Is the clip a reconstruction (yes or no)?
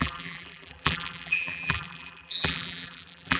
yes